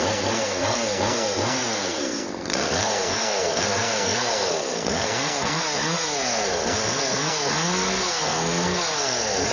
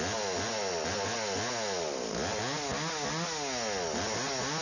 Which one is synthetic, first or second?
first